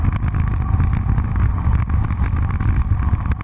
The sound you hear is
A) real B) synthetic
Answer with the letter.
A